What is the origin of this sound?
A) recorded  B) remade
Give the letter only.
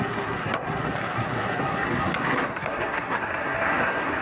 B